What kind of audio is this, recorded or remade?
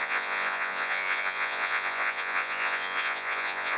remade